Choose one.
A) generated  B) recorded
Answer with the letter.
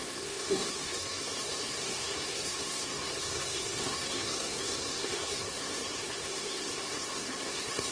A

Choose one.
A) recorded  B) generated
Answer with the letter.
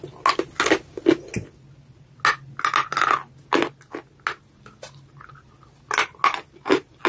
A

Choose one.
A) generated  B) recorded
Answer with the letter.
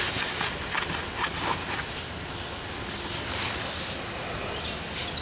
B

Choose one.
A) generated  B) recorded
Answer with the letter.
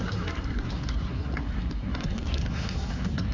A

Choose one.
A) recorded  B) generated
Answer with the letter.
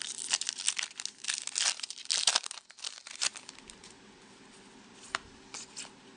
A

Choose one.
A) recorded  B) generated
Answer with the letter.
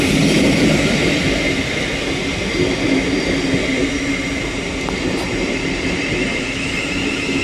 A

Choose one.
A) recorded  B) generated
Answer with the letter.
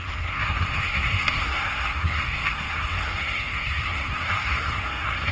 B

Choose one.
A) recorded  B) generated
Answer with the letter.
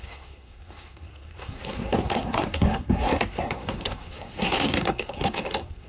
B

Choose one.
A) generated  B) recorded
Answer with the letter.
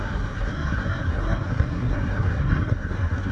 A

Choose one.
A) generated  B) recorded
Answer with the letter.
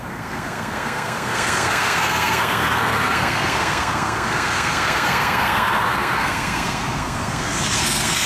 A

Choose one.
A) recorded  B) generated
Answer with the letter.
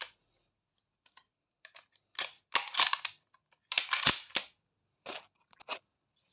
A